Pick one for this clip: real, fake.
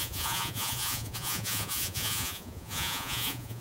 fake